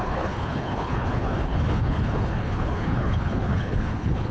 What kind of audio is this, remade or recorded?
remade